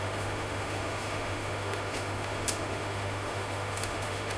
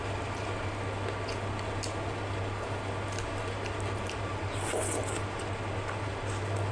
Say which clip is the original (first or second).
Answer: second